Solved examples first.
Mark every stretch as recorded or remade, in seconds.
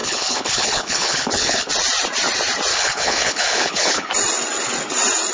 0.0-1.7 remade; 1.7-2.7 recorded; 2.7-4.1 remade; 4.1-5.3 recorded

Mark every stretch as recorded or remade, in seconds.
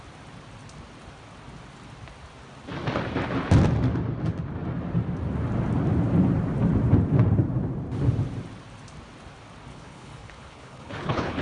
0.0-9.7 recorded; 9.7-11.4 remade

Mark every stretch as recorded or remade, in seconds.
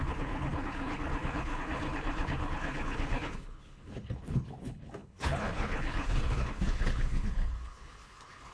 0.0-8.5 remade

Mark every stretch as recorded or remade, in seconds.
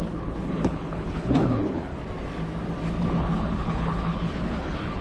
0.0-1.9 remade; 1.9-3.1 recorded; 3.1-5.0 remade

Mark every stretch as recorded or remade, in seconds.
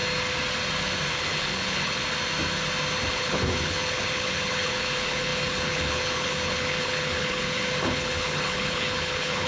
0.0-1.1 recorded; 1.1-2.0 remade; 2.0-3.1 recorded; 3.1-9.5 remade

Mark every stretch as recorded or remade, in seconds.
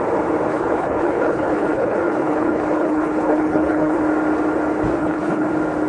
0.0-0.5 recorded; 0.5-4.0 remade; 4.0-5.0 recorded; 5.0-5.5 remade; 5.5-5.9 recorded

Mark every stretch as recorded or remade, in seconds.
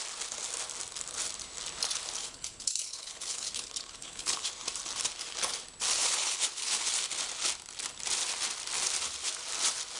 0.0-2.2 recorded; 2.2-4.5 remade; 4.5-6.0 recorded; 6.0-6.9 remade; 6.9-10.0 recorded